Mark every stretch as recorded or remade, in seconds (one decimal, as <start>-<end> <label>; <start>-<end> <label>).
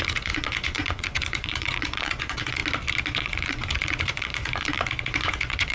0.0-2.6 remade; 2.6-3.1 recorded; 3.1-5.7 remade